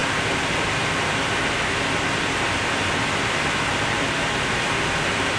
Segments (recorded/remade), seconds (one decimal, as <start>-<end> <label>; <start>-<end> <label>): 0.0-5.4 recorded